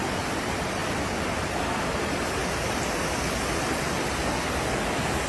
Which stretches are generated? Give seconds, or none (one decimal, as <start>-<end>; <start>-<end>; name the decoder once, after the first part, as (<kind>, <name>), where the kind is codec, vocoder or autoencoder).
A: 0.0-0.8 (vocoder, BigVGAN v2); 1.9-2.4